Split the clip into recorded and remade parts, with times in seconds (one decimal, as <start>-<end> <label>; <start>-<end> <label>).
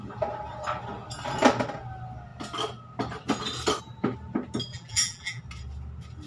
0.0-4.7 recorded; 4.7-5.4 remade; 5.4-6.3 recorded